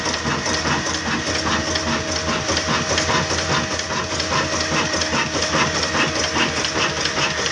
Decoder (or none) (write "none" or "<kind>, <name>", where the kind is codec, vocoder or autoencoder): none